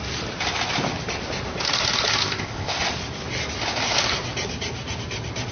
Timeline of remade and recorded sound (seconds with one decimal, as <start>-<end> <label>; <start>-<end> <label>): 0.0-2.2 recorded; 2.2-2.8 remade; 2.8-5.5 recorded